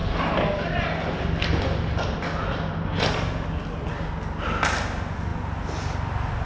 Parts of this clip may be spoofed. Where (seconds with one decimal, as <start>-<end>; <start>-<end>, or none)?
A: none